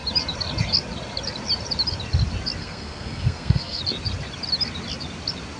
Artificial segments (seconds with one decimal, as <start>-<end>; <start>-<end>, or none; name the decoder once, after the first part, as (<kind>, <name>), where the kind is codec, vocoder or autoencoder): 2.6-3.8 (codec, SNAC)